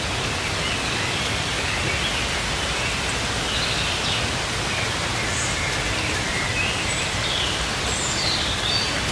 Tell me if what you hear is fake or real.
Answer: real